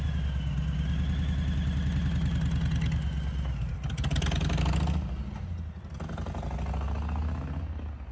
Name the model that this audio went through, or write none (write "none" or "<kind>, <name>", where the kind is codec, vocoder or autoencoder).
none